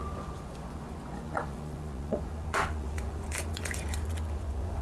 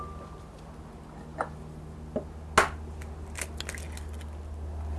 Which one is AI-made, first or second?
first